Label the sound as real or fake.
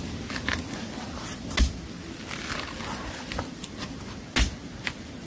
real